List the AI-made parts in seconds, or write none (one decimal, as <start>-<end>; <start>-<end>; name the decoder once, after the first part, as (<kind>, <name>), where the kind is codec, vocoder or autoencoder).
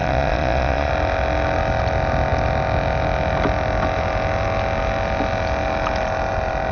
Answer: 0.0-0.9 (vocoder, Vocos)